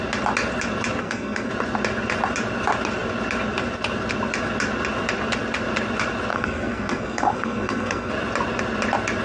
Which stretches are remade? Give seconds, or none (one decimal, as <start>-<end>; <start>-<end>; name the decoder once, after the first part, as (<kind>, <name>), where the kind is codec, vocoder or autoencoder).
1.0-1.5 (codec, SNAC); 6.3-8.1